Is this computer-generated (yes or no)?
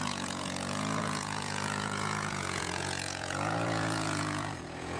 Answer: yes